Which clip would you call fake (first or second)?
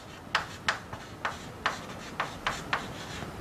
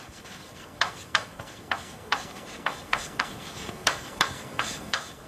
second